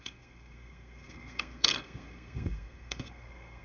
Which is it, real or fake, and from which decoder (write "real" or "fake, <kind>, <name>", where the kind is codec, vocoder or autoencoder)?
fake, codec, SNAC